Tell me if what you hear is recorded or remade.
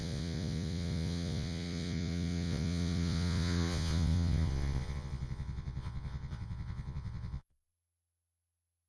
remade